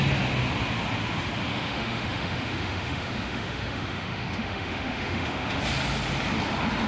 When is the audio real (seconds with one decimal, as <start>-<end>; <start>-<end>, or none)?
0.0-1.5; 5.6-6.9